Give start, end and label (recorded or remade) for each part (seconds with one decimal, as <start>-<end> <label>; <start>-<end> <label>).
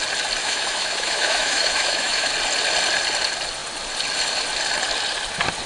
0.0-0.4 recorded; 0.4-2.3 remade; 2.3-5.7 recorded